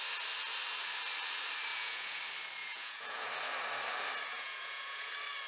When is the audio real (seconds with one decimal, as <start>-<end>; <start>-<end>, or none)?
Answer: 0.0-1.7; 2.2-2.6; 3.3-4.3; 5.1-5.5